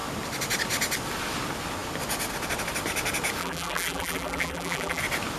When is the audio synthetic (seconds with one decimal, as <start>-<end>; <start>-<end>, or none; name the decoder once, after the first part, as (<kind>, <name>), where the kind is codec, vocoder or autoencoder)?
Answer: 3.4-5.0 (vocoder, BigVGAN v2)